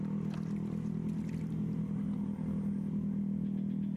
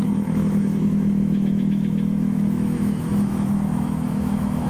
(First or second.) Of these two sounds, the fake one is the second